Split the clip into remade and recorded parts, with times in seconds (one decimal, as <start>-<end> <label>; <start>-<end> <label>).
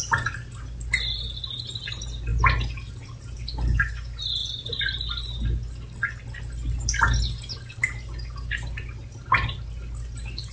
0.0-10.5 recorded